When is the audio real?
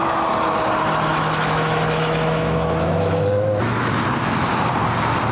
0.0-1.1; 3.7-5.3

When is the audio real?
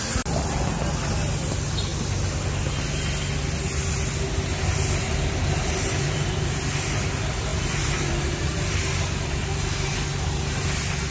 0.0-11.1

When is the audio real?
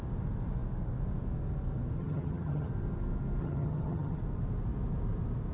0.0-2.0; 2.7-3.4; 4.2-5.5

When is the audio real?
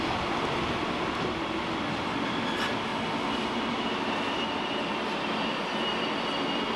0.0-6.8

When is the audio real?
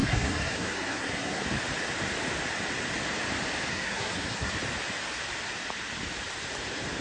1.4-3.7; 4.5-7.0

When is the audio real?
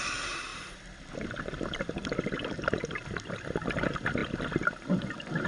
0.0-0.5; 3.3-5.5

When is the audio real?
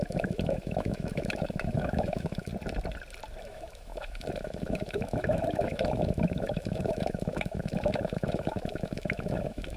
2.5-3.4